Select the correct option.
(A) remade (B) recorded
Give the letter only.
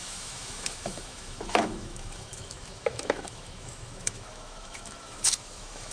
A